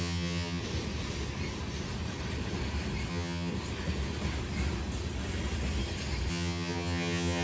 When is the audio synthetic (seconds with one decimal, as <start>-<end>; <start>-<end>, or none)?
0.0-0.6; 3.1-3.5; 6.3-7.4